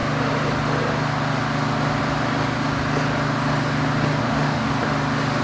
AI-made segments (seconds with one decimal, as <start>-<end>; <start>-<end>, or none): 4.2-4.7